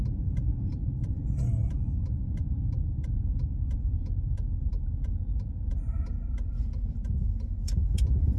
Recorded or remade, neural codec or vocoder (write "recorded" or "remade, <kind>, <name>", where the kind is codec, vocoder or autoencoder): remade, vocoder, BigVGAN v2